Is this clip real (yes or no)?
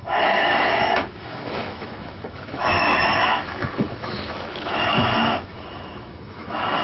no